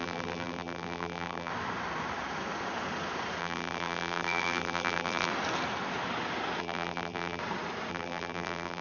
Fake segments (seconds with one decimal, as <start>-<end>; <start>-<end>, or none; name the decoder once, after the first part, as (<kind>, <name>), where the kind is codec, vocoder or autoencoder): 0.0-1.5 (vocoder, BigVGAN v2); 3.4-5.3; 6.6-7.4; 7.9-8.8